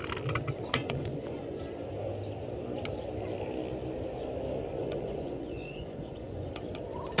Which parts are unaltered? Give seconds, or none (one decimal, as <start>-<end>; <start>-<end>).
0.0-0.8; 1.6-4.8; 6.5-7.2